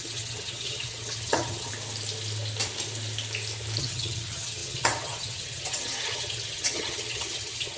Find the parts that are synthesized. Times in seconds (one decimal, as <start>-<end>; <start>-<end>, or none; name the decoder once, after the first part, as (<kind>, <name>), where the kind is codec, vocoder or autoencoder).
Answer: 0.0-1.7 (vocoder, HiFi-GAN); 3.8-7.8